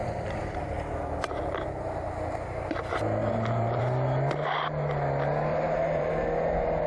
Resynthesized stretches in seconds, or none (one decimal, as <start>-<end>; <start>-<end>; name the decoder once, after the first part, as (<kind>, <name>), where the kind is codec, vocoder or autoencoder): 0.0-0.6 (vocoder, BigVGAN v2); 3.2-3.8; 5.5-6.1